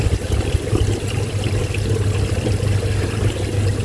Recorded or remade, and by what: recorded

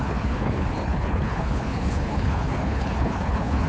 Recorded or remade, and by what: remade, codec, HILCodec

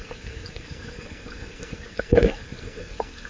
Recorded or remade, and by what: remade, codec, SNAC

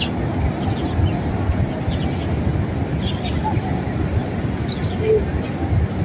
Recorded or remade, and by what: recorded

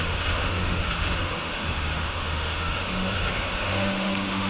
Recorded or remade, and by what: remade, autoencoder, DAC-VAE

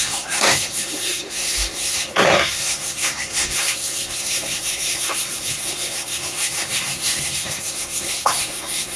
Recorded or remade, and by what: remade, codec, SNAC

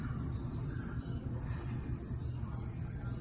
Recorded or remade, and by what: recorded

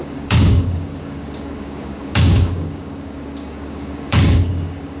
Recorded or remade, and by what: remade, codec, DAC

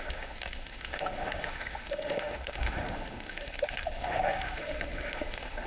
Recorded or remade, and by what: remade, autoencoder, DAC-VAE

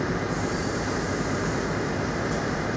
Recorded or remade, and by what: remade, vocoder, BigVGAN v2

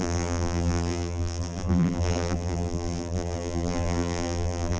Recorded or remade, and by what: remade, vocoder, BigVGAN v2